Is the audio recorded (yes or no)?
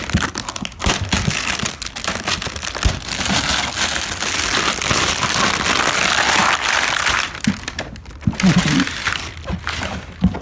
yes